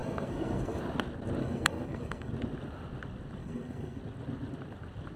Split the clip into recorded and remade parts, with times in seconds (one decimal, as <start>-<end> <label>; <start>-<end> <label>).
0.0-0.8 remade; 0.8-1.4 recorded; 1.4-2.3 remade; 2.3-3.4 recorded; 3.4-4.0 remade; 4.0-5.2 recorded